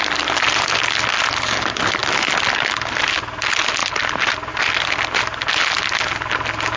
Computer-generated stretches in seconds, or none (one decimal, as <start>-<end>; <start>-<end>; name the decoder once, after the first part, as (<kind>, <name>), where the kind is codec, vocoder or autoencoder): none